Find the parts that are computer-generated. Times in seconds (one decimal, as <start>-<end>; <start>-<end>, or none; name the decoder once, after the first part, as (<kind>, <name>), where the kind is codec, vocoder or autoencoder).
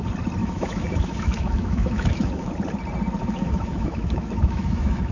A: 0.4-2.5 (autoencoder, DAC-VAE); 3.2-5.1